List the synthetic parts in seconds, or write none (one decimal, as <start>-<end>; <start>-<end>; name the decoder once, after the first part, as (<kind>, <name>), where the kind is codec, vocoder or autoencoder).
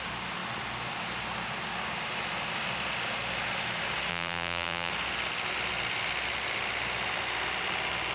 4.1-4.9 (vocoder, BigVGAN v2)